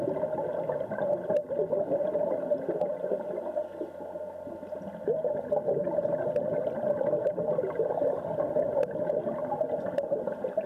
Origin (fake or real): real